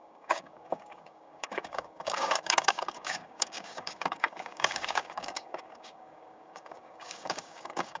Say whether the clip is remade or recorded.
remade